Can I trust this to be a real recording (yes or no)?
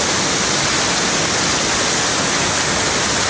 yes